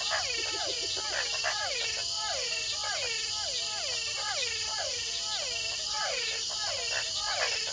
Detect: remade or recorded recorded